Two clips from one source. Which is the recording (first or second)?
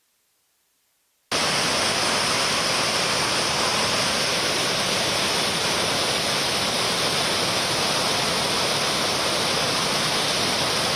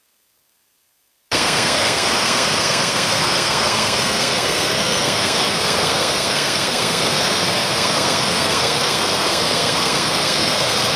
first